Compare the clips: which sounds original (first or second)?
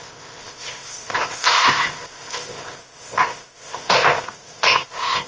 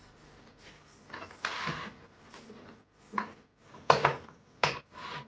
second